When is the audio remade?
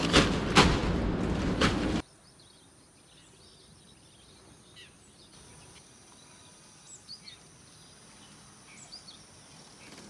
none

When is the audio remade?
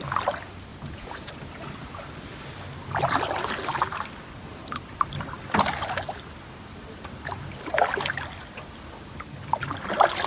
0.7-1.3 (vocoder, Vocos)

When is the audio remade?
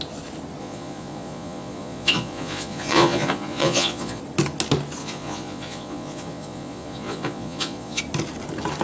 0.6-4.2 (vocoder, Vocos); 5.0-8.0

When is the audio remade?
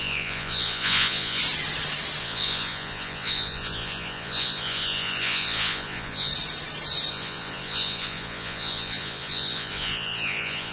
0.0-1.4 (vocoder, Vocos); 2.2-6.3; 7.1-10.7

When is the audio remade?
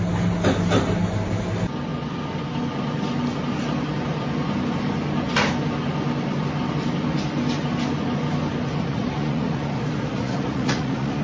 8.9-9.7 (vocoder, Vocos); 10.1-11.2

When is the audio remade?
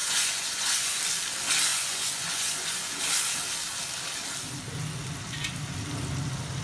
0.0-1.0 (vocoder, Vocos); 1.7-3.0